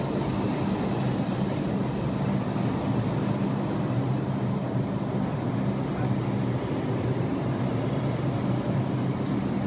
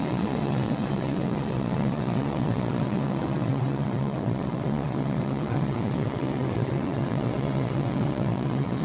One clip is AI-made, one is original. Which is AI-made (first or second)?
second